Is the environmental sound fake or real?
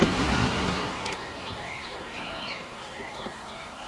fake